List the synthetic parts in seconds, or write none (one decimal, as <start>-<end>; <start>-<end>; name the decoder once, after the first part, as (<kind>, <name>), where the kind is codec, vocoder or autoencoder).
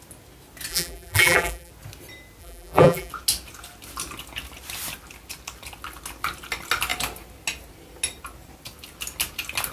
0.7-1.7 (vocoder, BigVGAN v2); 2.4-3.1